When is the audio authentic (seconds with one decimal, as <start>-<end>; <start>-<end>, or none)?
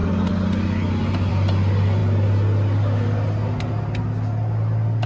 0.0-5.1